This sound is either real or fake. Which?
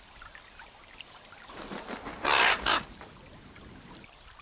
real